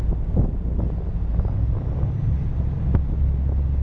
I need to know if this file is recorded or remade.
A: recorded